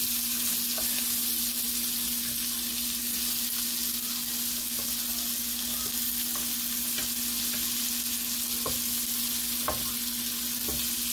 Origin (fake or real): real